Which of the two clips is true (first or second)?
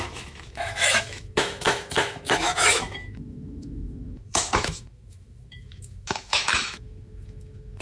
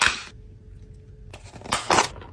second